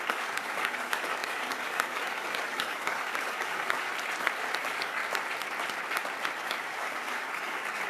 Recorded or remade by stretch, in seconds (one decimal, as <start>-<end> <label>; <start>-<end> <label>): 0.0-3.9 remade; 3.9-4.6 recorded; 4.6-5.0 remade; 5.0-6.4 recorded; 6.4-7.9 remade